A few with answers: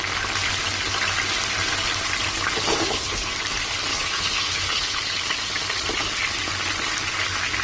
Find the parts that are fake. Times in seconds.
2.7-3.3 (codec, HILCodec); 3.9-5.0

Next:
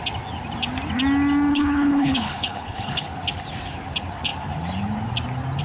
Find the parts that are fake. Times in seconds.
1.5-3.1 (codec, HILCodec)

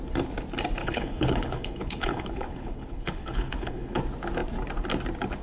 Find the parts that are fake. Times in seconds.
0.8-4.0 (codec, HILCodec)

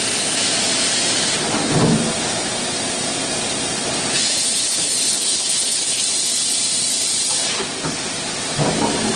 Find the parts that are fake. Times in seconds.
4.1-6.0 (codec, HILCodec)

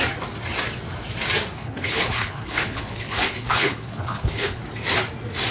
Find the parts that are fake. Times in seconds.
1.6-4.6 (codec, HILCodec)